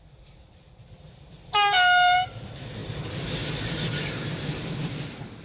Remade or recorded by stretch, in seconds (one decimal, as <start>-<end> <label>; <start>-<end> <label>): 0.0-5.4 recorded